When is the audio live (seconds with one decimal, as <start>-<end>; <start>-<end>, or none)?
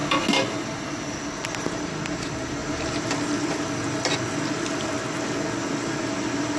0.0-6.6